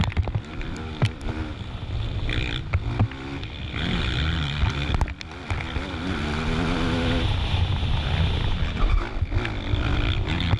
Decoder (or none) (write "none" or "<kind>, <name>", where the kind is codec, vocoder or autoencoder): none